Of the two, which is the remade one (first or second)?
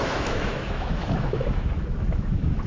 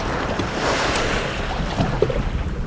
first